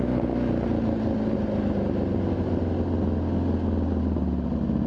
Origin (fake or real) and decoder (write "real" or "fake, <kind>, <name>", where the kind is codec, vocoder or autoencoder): real